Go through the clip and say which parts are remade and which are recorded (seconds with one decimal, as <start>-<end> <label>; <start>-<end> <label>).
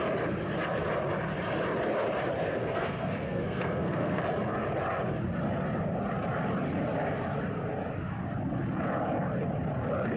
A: 0.0-2.6 recorded; 2.6-4.2 remade; 4.2-10.2 recorded